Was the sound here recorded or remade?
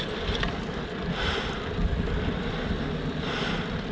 recorded